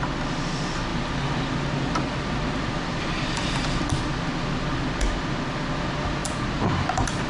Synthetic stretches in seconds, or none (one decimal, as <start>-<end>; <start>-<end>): 0.9-4.3; 6.2-7.3